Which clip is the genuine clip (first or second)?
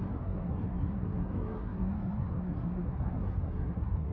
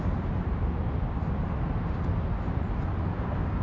second